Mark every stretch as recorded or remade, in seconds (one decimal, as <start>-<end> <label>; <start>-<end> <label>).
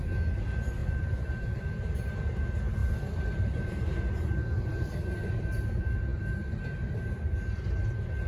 0.0-0.8 recorded; 0.8-1.6 remade; 1.6-2.8 recorded; 2.8-4.0 remade; 4.0-8.3 recorded